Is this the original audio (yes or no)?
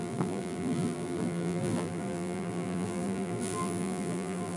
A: no